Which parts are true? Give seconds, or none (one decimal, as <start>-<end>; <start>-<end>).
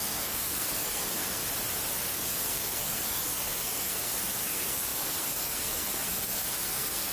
1.4-1.9